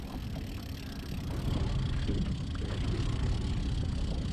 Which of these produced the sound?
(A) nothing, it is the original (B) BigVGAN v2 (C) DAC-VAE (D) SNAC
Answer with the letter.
A